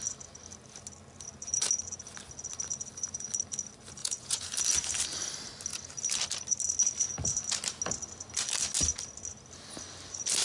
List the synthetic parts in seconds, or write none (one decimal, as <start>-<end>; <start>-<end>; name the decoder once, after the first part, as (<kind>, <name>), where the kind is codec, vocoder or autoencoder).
4.0-4.5 (vocoder, Vocos)